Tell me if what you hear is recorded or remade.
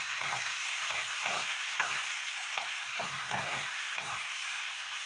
remade